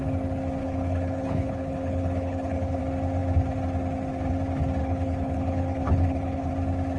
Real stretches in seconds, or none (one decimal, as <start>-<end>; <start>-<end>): 0.0-0.6; 2.8-4.8; 6.5-7.0